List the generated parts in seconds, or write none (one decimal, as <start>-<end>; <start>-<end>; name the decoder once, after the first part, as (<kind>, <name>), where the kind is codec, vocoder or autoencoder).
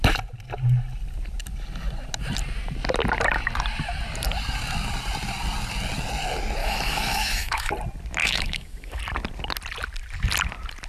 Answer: 6.6-7.7 (autoencoder, DAC-VAE); 8.2-9.0